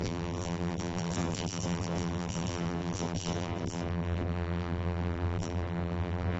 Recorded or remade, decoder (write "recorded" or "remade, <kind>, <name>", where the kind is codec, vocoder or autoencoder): remade, vocoder, BigVGAN v2